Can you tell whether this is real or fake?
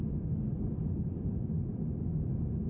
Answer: real